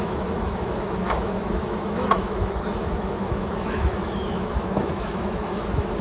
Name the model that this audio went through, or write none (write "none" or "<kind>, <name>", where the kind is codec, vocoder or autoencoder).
autoencoder, DAC-VAE